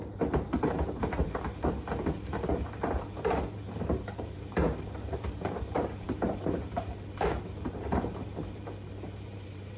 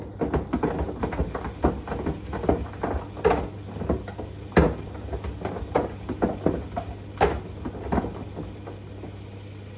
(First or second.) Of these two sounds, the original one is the second